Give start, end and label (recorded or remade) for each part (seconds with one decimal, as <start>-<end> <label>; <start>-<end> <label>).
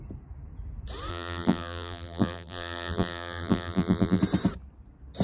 0.0-1.1 recorded; 1.1-4.2 remade; 4.2-5.2 recorded